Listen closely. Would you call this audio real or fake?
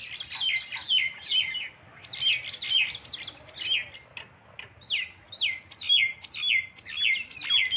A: real